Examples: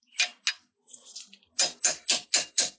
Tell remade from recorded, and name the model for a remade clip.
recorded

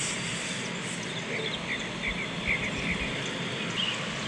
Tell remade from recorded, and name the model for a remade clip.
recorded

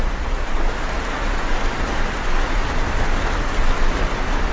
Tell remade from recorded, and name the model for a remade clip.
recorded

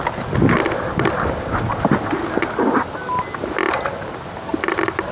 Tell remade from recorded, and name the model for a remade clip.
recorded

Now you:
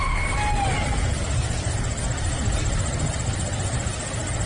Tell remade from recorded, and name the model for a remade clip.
recorded